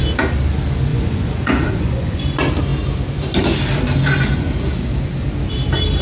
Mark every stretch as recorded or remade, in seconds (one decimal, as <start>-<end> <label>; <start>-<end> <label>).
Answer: 0.0-0.9 recorded; 0.9-2.2 remade; 2.2-6.0 recorded